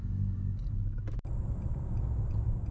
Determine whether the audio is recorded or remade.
recorded